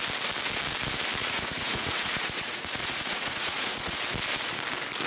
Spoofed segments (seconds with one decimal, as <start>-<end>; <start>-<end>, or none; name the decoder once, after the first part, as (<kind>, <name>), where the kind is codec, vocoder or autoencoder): 1.2-4.0 (vocoder, Vocos)